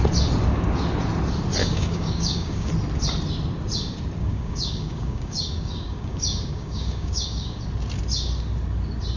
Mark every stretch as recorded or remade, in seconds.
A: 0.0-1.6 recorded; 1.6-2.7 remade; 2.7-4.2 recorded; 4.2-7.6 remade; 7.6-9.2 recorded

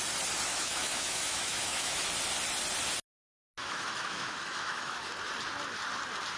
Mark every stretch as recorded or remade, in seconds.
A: 0.0-0.5 recorded; 0.5-2.0 remade; 2.0-3.6 recorded; 3.6-5.1 remade; 5.1-6.4 recorded

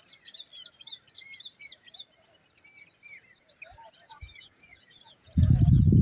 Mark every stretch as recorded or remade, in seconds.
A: 0.0-4.1 recorded; 4.1-5.4 remade; 5.4-6.0 recorded

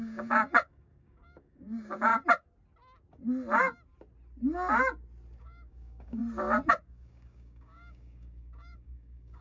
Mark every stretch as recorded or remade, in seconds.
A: 0.0-2.1 remade; 2.1-5.4 recorded; 5.4-6.2 remade; 6.2-6.7 recorded; 6.7-9.4 remade

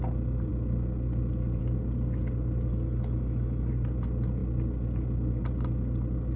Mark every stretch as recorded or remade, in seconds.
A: 0.0-2.7 recorded; 2.7-3.7 remade; 3.7-6.4 recorded

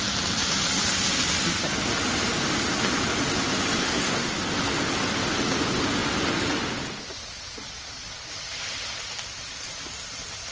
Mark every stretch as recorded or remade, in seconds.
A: 0.0-3.8 recorded; 3.8-4.3 remade; 4.3-10.5 recorded

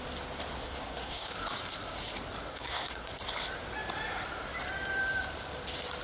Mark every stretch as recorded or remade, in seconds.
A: 0.0-0.6 recorded; 0.6-1.3 remade; 1.3-2.5 recorded; 2.5-3.1 remade; 3.1-6.0 recorded

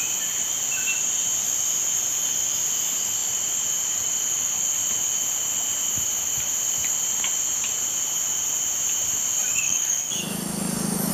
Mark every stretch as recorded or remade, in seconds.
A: 0.0-9.5 recorded; 9.5-11.1 remade